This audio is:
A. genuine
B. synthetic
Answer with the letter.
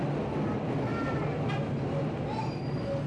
A